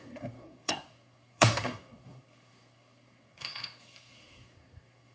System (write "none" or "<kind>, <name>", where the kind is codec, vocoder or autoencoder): codec, SNAC